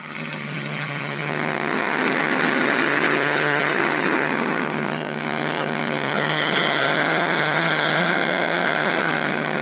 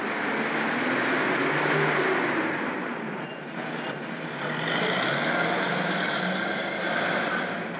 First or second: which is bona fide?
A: second